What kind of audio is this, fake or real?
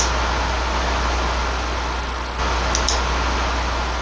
real